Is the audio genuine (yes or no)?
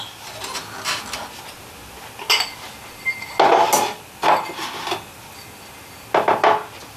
yes